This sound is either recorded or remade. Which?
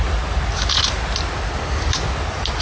recorded